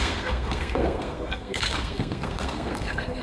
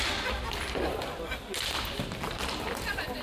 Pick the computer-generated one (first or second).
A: first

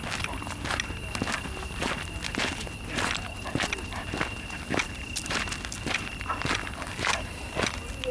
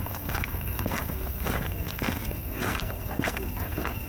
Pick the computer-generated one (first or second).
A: second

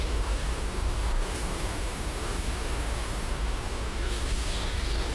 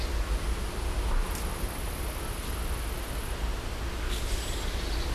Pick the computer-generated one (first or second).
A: first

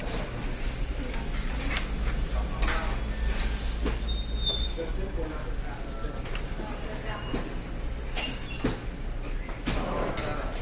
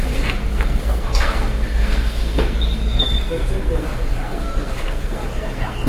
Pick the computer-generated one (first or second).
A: second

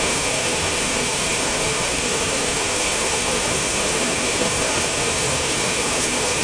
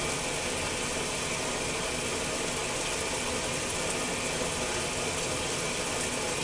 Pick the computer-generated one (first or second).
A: first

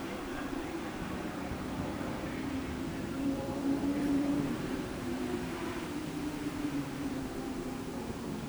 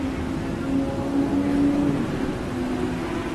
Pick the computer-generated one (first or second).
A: first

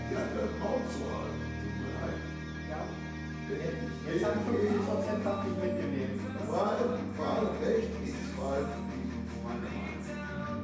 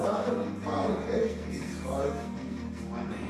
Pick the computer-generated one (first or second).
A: second